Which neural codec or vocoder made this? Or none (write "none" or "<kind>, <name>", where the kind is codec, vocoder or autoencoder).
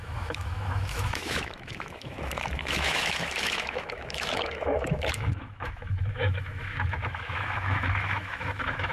autoencoder, DAC-VAE